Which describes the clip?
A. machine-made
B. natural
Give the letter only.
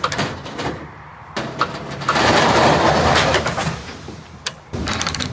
A